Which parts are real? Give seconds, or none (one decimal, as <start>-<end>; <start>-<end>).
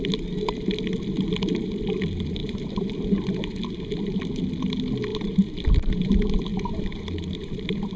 0.0-2.4; 2.9-5.1; 6.1-6.5